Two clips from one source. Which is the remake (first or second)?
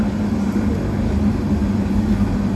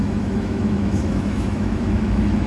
second